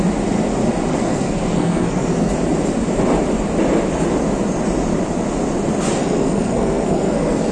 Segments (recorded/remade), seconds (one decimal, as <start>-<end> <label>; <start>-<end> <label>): 0.0-0.9 recorded; 0.9-2.3 remade; 2.3-6.0 recorded; 6.0-7.5 remade